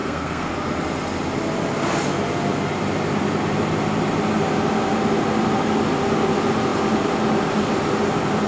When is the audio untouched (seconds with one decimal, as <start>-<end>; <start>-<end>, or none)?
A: 0.5-8.5